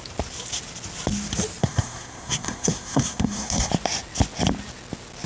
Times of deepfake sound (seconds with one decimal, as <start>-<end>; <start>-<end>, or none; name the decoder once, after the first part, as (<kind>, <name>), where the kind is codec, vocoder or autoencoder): 1.6-3.7 (codec, SNAC)